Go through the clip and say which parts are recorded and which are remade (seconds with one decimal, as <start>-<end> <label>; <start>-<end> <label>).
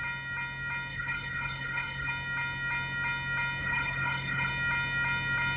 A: 0.0-0.9 recorded; 0.9-2.1 remade; 2.1-3.6 recorded; 3.6-4.5 remade; 4.5-5.6 recorded